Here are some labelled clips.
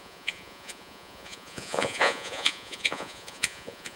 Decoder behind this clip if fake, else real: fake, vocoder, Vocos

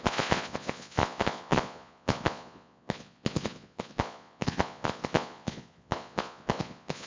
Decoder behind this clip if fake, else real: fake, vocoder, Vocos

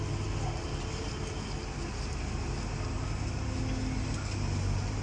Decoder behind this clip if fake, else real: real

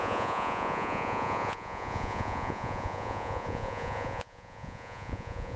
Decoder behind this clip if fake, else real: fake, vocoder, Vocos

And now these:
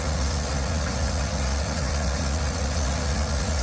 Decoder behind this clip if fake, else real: fake, vocoder, Vocos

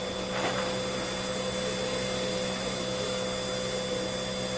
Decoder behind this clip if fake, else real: real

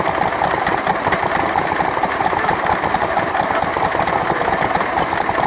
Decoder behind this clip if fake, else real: real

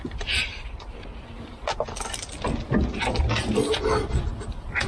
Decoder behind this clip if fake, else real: real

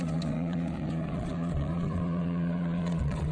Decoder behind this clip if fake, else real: fake, vocoder, Vocos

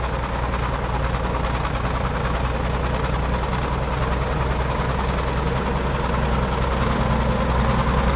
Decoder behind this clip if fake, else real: real